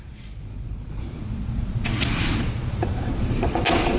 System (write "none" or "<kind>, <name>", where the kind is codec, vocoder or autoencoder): vocoder, Vocos